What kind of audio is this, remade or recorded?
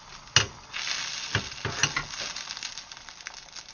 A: recorded